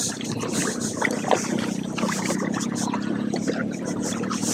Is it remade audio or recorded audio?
recorded